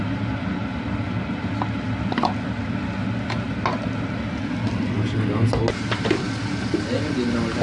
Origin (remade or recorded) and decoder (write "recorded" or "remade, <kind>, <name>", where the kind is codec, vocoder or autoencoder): recorded